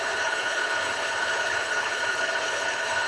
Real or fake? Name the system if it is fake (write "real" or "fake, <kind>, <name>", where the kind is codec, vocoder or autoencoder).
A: fake, codec, HILCodec